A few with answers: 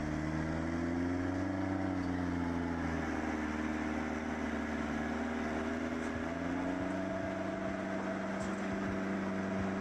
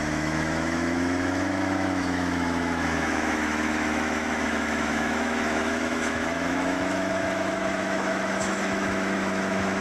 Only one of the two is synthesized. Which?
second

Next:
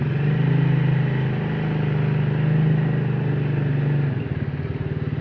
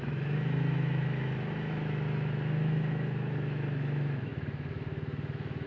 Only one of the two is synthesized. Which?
second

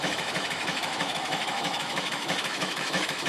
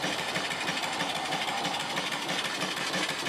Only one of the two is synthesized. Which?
first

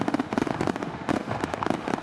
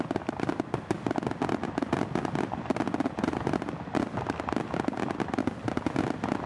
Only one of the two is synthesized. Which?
first